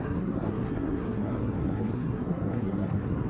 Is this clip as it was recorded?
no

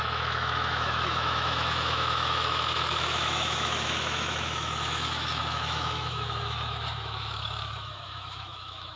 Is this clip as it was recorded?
no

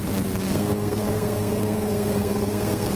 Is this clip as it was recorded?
no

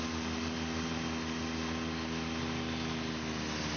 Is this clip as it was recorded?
yes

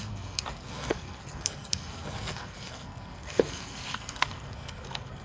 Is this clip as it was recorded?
no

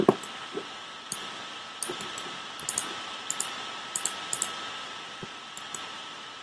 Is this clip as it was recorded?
no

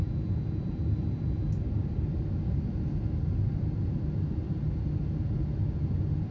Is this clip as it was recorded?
yes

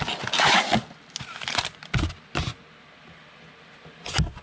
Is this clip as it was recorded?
yes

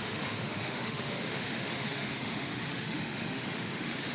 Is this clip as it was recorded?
no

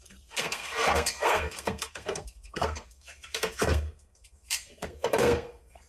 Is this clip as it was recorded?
no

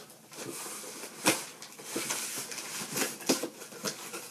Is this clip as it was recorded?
yes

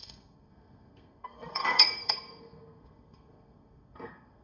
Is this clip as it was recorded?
no